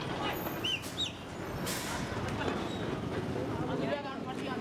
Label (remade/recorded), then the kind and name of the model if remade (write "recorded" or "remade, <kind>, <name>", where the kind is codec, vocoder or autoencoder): remade, vocoder, BigVGAN v2